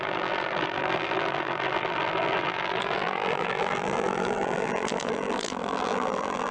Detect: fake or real fake